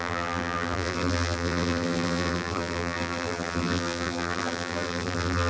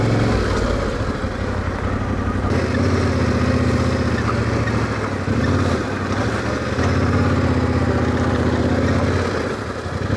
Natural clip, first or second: second